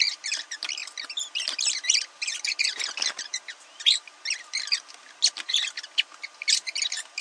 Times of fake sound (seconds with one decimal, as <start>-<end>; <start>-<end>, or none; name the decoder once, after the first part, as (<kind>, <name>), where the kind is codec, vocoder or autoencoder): none